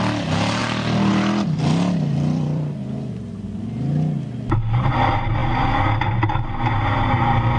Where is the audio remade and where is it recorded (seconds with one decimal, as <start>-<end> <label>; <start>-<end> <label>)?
0.0-2.1 recorded; 2.1-3.2 remade; 3.2-7.6 recorded